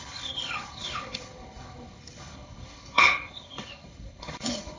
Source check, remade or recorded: remade